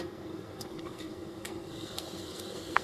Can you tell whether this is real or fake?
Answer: fake